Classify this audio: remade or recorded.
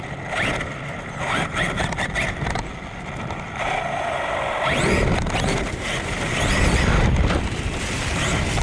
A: recorded